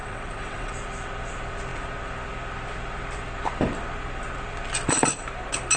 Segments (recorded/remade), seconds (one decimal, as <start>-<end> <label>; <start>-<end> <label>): 0.0-0.7 remade; 0.7-5.8 recorded